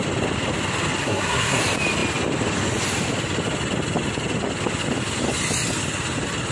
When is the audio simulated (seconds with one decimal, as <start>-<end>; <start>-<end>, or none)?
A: 1.0-1.6